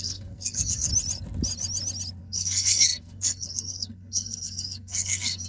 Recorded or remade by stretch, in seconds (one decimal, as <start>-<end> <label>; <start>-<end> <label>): 0.0-0.9 remade; 0.9-2.2 recorded; 2.2-5.5 remade